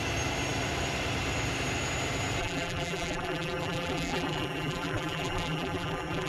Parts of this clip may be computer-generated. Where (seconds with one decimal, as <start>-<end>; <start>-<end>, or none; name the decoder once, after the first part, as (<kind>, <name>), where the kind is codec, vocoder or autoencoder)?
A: 2.4-6.3 (vocoder, BigVGAN v2)